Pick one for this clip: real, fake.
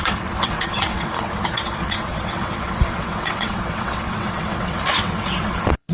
fake